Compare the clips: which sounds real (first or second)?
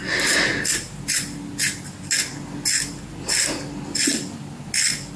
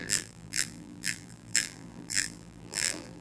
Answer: first